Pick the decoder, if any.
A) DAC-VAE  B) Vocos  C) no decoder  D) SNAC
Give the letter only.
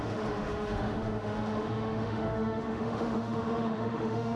A